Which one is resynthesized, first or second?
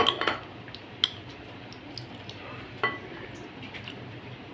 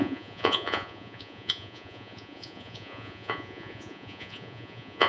second